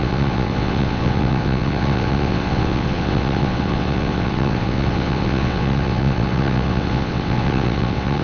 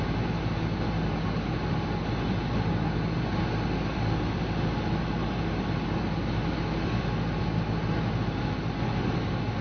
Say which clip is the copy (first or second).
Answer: first